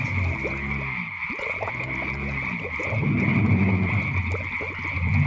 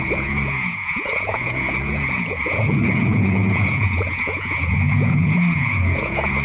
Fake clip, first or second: second